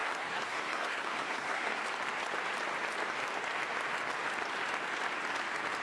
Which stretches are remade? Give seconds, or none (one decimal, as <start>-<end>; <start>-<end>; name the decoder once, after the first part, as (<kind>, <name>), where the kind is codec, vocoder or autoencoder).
0.0-1.8 (codec, SNAC)